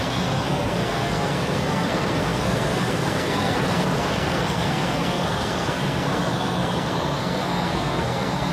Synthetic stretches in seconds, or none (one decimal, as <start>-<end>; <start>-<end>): 0.0-8.5